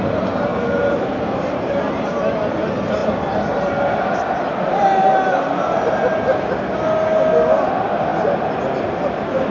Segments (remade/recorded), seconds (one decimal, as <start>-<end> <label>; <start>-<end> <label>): 0.0-0.5 recorded; 0.5-1.8 remade; 1.8-3.0 recorded; 3.0-3.7 remade; 3.7-9.5 recorded